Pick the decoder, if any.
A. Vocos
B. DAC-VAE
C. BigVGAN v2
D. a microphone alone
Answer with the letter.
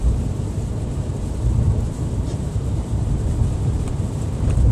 C